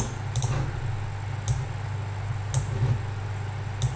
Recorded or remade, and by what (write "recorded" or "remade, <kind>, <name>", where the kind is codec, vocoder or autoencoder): recorded